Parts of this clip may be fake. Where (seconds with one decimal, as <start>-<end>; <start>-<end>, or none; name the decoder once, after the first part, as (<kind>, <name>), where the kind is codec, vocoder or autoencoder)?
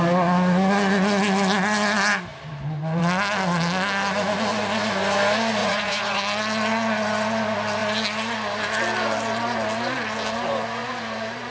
5.6-6.2 (vocoder, Vocos)